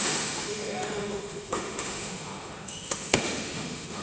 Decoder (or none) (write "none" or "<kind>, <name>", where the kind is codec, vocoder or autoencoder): autoencoder, DAC-VAE